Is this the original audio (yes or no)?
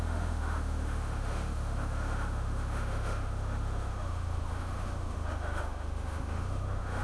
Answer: no